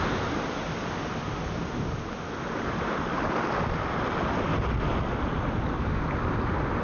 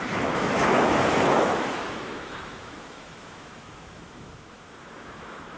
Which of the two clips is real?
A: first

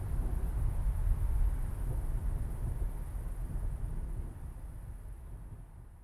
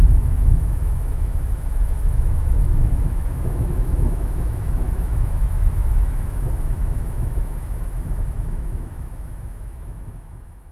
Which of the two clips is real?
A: first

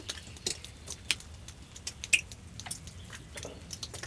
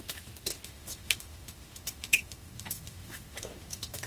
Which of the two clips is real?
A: first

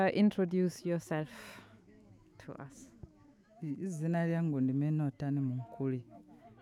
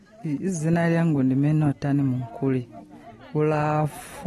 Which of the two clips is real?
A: second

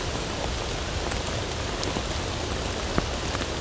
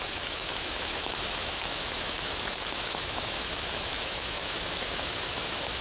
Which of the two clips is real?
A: first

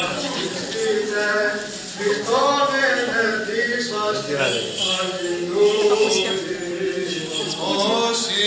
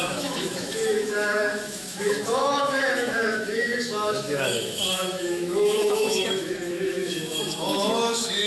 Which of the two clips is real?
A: first